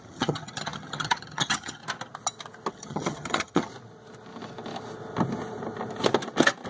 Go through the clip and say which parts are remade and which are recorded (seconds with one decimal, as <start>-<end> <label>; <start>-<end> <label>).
0.0-1.8 remade; 1.8-2.7 recorded; 2.7-3.7 remade; 3.7-6.7 recorded